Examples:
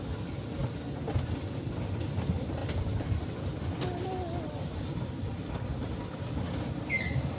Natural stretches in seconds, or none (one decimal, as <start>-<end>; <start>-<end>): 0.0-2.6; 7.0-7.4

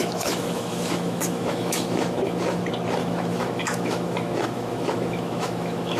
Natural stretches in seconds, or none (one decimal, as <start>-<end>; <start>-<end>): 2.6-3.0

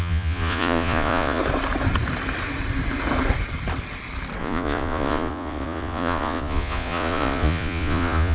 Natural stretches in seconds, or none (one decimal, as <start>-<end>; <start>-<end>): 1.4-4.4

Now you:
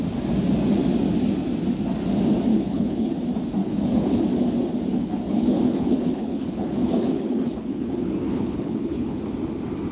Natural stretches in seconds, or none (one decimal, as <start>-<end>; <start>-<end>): 0.0-2.5; 3.1-3.6; 4.2-4.9; 9.2-9.9

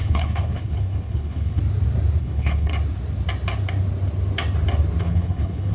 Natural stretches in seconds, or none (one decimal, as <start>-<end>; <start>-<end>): 1.6-2.2; 2.7-5.0